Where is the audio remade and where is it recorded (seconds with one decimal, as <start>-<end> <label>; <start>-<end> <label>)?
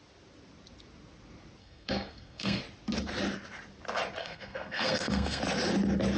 0.0-1.6 recorded; 1.6-2.6 remade; 2.6-4.2 recorded; 4.2-5.4 remade; 5.4-6.2 recorded